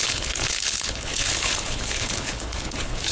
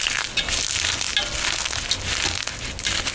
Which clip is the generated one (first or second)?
first